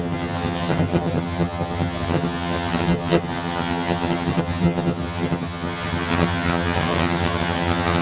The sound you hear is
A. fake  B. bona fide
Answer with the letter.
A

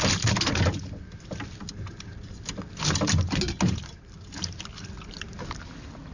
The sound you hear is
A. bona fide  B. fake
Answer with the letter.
A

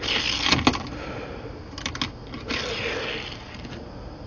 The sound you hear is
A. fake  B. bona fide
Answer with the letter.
B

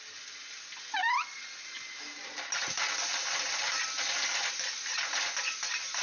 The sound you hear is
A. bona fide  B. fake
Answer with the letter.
A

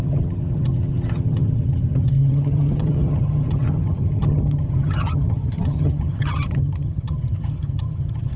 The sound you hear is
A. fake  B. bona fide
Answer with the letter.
A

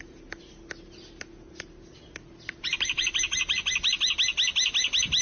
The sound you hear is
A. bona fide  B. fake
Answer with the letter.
A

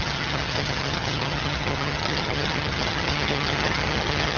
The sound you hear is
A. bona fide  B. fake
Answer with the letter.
B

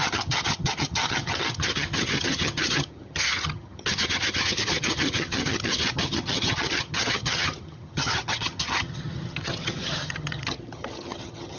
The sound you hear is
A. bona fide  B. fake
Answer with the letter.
B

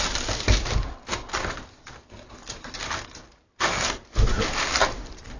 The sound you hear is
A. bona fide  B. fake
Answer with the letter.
A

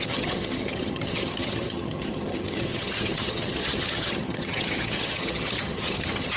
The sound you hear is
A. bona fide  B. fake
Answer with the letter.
B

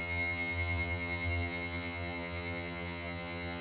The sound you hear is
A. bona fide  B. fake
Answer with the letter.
B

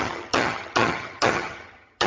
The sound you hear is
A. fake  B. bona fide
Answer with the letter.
A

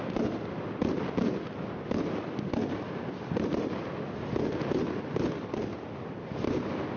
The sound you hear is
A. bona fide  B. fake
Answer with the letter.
A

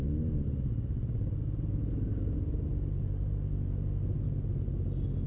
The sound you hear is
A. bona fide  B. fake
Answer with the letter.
A